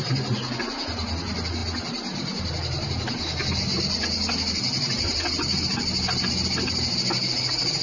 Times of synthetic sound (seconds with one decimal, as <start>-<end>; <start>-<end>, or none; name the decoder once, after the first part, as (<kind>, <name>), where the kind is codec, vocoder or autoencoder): none